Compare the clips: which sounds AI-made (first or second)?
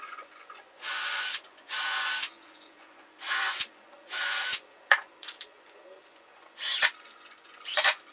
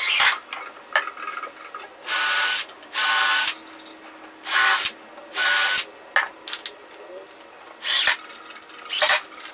first